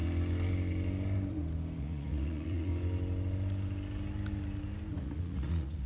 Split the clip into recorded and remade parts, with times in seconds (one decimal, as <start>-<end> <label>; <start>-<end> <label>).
0.0-1.8 recorded; 1.8-2.7 remade; 2.7-5.0 recorded; 5.0-5.9 remade